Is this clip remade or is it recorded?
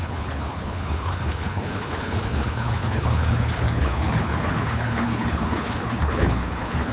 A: remade